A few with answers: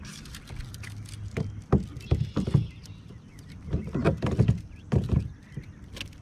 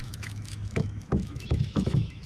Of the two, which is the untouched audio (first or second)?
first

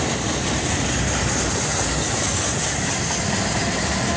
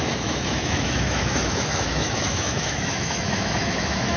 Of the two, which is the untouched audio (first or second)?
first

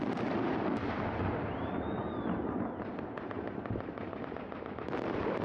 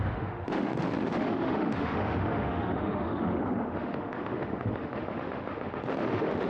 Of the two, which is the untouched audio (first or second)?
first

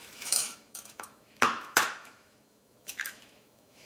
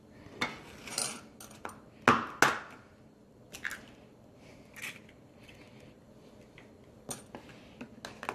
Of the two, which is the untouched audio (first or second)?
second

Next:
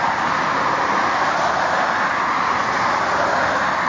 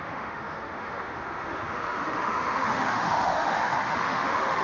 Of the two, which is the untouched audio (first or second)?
first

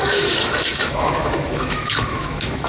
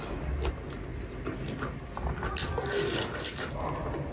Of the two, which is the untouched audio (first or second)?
second